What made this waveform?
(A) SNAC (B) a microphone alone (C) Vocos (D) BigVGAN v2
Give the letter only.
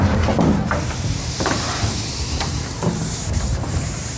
D